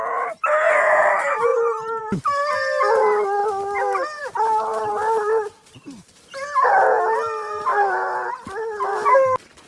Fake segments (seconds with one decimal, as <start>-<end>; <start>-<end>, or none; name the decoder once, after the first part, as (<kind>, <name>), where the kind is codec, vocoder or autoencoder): 1.5-2.2 (vocoder, BigVGAN v2); 7.7-8.3